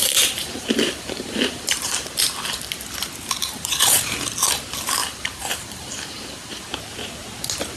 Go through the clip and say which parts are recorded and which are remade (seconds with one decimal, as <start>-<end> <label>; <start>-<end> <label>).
0.0-2.2 remade; 2.2-3.4 recorded; 3.4-4.1 remade; 4.1-5.0 recorded; 5.0-6.6 remade; 6.6-7.8 recorded